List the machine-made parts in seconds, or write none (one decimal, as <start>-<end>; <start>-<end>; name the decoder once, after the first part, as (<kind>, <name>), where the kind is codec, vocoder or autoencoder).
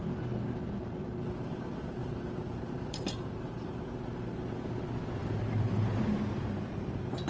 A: 2.0-3.5 (vocoder, BigVGAN v2); 5.2-6.0